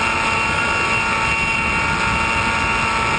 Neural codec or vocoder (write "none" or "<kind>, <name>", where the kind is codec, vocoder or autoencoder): none